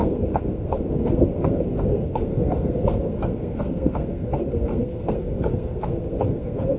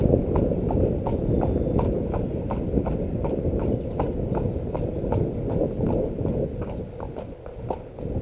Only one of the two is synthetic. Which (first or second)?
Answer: first